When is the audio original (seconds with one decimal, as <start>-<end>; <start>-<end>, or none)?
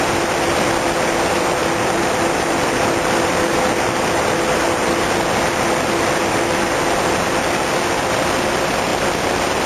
0.0-1.6; 6.6-8.9